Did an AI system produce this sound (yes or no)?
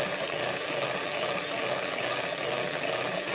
yes